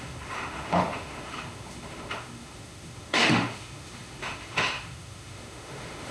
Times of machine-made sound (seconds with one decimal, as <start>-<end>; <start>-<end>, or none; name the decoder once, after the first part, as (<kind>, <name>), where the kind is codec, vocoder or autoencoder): 0.0-6.1 (autoencoder, DAC-VAE)